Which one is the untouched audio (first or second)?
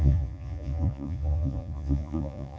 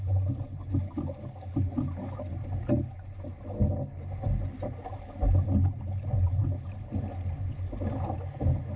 second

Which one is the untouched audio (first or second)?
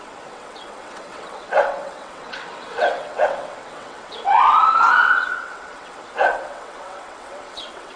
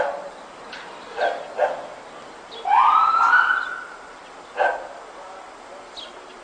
second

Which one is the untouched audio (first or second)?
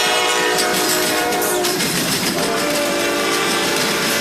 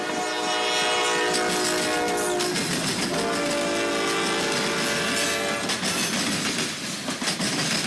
second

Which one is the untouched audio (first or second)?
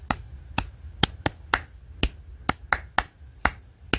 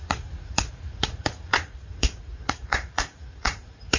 first